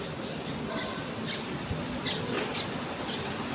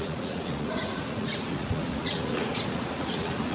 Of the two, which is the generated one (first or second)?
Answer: second